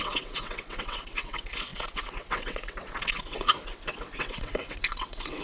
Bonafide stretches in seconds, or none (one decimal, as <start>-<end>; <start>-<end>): none